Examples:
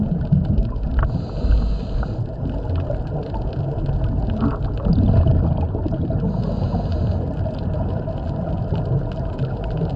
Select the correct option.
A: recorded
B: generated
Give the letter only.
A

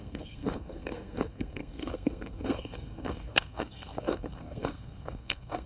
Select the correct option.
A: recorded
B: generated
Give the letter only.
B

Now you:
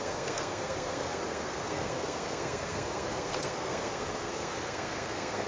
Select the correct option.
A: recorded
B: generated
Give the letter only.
B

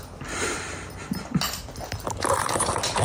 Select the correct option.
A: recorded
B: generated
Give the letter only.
A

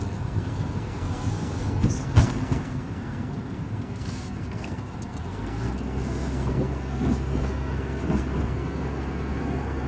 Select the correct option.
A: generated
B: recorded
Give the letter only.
A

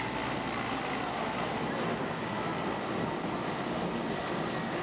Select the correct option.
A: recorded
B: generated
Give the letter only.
A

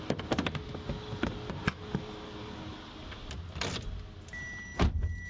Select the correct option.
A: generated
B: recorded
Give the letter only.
B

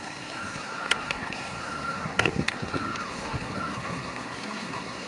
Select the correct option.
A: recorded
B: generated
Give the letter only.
B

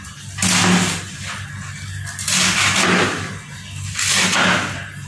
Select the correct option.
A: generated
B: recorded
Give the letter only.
B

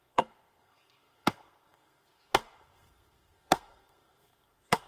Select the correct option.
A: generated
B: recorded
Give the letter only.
A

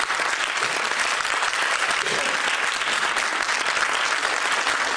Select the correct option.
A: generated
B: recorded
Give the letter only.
B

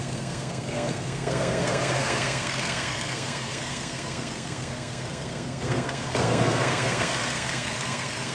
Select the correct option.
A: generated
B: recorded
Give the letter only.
A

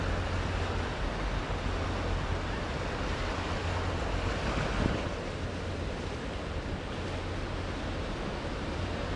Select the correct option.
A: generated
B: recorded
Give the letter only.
B